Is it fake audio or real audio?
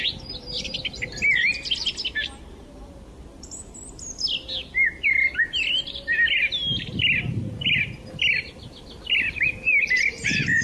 real